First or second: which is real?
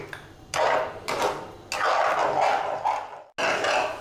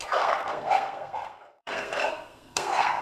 first